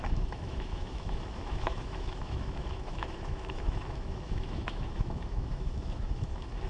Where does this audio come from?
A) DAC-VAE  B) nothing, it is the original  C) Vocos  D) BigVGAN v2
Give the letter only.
A